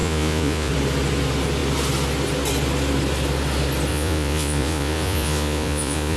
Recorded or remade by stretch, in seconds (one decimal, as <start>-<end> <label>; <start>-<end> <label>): 0.0-0.7 remade; 0.7-3.9 recorded; 3.9-6.2 remade